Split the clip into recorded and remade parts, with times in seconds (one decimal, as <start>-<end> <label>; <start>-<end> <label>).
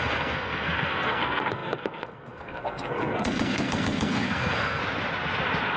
0.0-4.8 remade; 4.8-5.8 recorded